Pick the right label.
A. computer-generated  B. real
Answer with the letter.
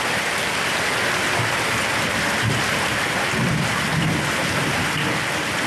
B